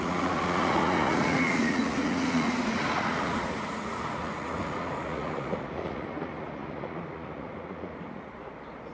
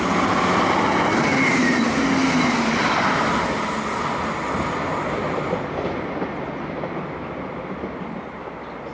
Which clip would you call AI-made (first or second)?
first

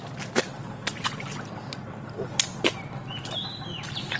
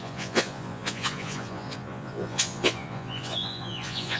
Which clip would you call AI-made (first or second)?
second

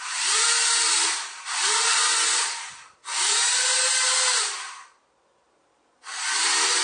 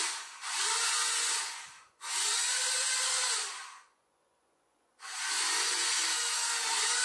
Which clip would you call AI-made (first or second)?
second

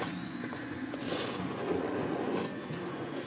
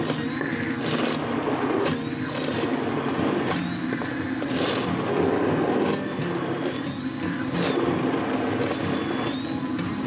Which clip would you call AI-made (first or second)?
first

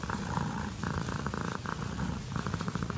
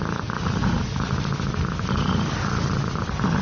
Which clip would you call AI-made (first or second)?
first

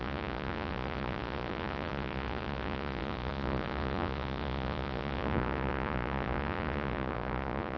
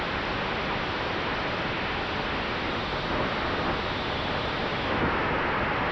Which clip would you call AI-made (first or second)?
first